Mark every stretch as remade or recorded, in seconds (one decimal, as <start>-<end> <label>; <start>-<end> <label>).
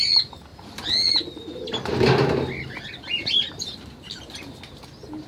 0.0-5.3 recorded